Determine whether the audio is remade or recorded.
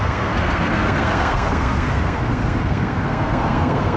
remade